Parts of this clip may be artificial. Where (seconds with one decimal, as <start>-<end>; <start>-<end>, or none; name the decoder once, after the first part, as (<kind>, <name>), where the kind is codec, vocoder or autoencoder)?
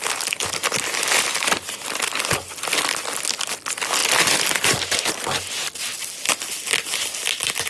1.3-2.1 (vocoder, BigVGAN v2)